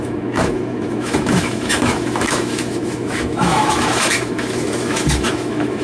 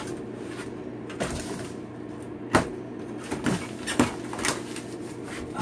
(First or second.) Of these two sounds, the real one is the second